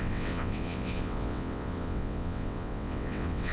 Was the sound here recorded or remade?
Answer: remade